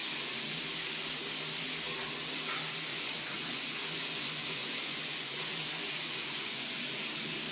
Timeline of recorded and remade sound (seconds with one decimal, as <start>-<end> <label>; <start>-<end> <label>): 0.0-0.6 remade; 0.6-2.9 recorded; 2.9-7.0 remade; 7.0-7.5 recorded